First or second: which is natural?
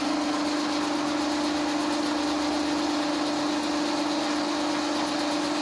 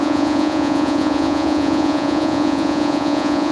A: first